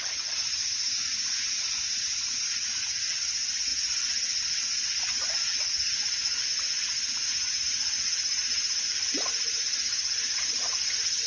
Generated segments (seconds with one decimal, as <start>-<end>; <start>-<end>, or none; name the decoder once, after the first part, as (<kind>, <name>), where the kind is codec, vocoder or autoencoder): none